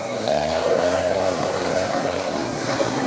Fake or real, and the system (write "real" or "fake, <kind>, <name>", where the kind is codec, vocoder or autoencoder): fake, codec, SNAC